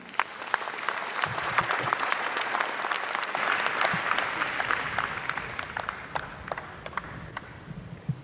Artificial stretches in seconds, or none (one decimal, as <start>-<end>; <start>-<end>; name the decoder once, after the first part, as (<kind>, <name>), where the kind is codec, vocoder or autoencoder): 1.3-2.6 (vocoder, Vocos)